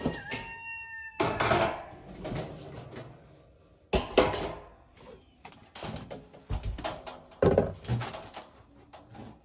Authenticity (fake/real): real